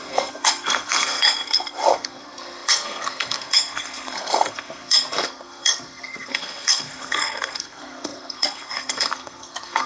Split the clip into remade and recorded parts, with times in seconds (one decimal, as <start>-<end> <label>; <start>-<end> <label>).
0.0-9.9 remade